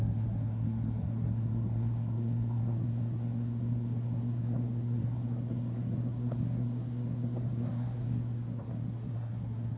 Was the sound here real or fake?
fake